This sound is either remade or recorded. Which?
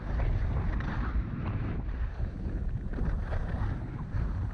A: remade